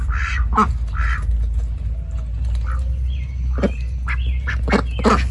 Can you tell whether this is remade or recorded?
recorded